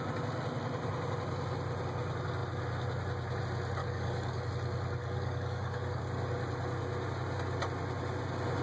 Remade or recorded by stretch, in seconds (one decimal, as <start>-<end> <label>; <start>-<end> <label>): 0.0-3.8 recorded; 3.8-4.5 remade; 4.5-5.0 recorded; 5.0-6.0 remade; 6.0-8.6 recorded